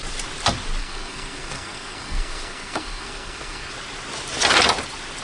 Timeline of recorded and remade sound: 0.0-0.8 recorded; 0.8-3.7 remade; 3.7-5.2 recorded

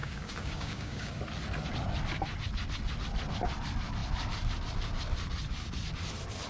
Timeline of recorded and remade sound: 0.0-1.1 remade; 1.1-6.5 recorded